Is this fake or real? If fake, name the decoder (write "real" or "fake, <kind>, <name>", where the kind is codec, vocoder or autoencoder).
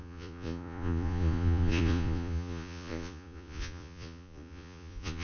fake, vocoder, Vocos